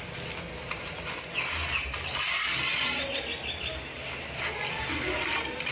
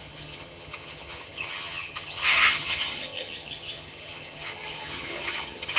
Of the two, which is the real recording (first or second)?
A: first